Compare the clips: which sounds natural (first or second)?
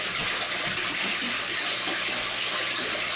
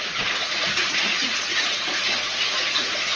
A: first